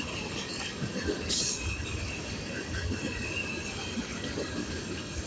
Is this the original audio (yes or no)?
no